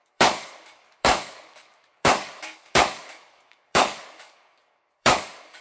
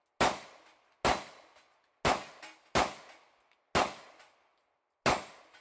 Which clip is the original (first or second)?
second